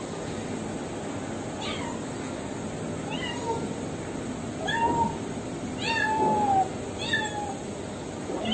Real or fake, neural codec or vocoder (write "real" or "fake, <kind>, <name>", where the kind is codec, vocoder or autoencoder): real